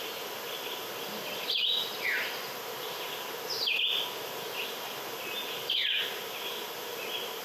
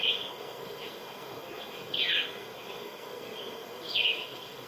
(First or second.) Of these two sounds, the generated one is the second